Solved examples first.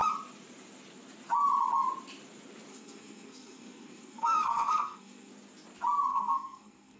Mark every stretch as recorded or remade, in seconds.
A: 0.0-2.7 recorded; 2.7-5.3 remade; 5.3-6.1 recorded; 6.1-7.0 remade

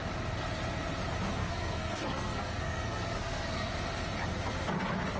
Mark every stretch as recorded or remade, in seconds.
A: 0.0-1.4 recorded; 1.4-3.7 remade; 3.7-5.2 recorded

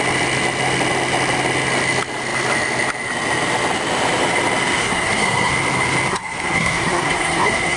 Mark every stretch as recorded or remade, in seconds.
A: 0.0-4.8 recorded; 4.8-5.5 remade; 5.5-6.1 recorded; 6.1-7.8 remade

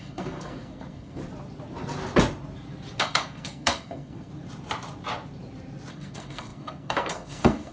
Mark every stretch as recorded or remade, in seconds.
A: 0.0-1.2 remade; 1.2-3.0 recorded; 3.0-4.3 remade; 4.3-5.9 recorded; 5.9-7.7 remade

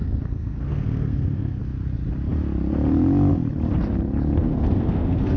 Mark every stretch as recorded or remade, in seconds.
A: 0.0-1.6 remade; 1.6-4.4 recorded; 4.4-5.4 remade